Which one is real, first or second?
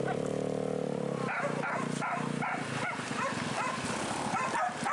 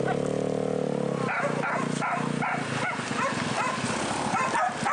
second